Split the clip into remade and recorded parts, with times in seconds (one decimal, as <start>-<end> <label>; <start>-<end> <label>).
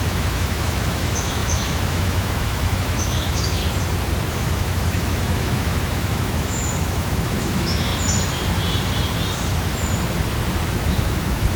0.0-3.6 remade; 3.6-4.3 recorded; 4.3-7.9 remade; 7.9-10.7 recorded; 10.7-11.6 remade